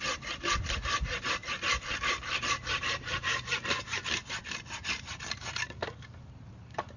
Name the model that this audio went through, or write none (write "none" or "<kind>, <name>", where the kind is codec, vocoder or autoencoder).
vocoder, BigVGAN v2